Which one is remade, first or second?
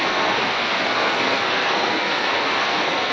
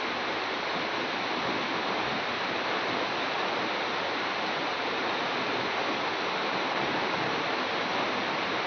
first